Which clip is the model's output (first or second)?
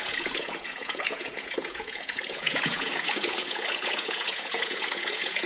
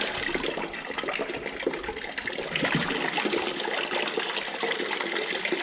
first